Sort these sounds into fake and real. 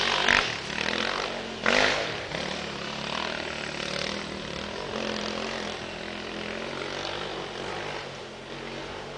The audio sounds real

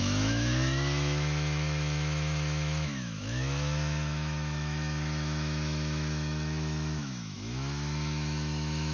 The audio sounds fake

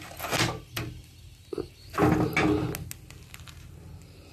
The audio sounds real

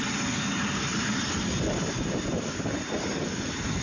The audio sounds real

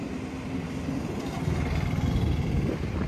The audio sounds real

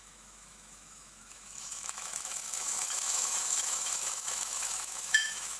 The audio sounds fake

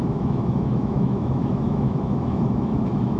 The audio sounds fake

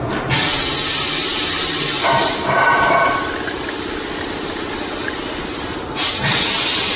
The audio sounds real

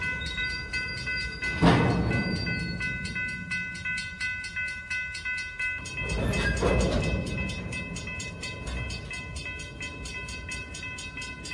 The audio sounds real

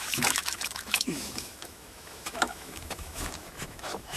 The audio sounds fake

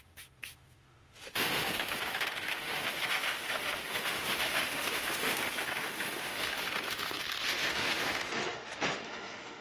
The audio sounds fake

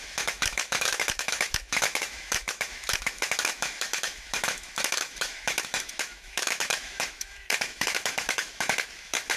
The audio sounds fake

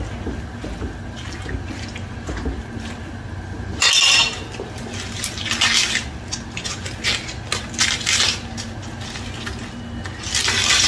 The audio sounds real